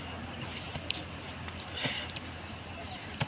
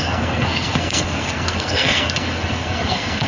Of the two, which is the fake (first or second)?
second